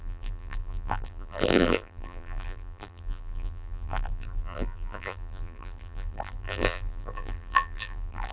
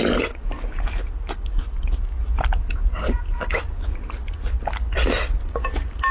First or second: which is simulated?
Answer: first